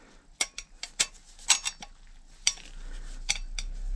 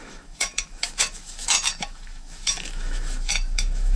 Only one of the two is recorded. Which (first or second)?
first